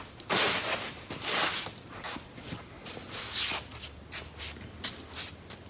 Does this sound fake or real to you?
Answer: real